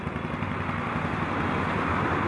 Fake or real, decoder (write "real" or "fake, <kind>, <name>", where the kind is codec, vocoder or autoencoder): real